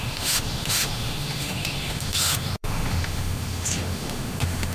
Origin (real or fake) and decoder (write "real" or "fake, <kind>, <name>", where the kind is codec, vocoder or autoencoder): fake, autoencoder, DAC-VAE